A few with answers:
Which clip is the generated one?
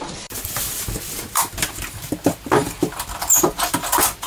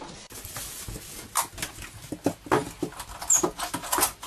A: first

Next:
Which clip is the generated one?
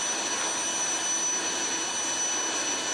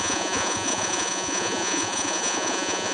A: second